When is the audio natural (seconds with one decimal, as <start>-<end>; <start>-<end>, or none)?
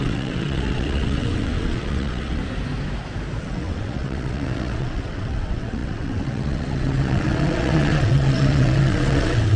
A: 2.4-3.4